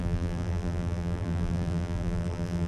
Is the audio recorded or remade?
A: remade